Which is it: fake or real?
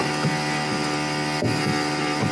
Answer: real